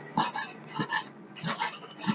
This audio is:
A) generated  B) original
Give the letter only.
A